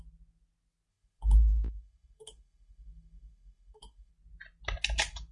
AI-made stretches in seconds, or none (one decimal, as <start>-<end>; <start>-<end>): 0.9-4.1